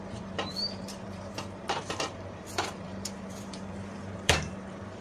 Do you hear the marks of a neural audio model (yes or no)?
yes